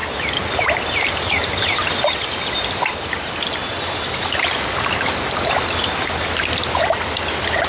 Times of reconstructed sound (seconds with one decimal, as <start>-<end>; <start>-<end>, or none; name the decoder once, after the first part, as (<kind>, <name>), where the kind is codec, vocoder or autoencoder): none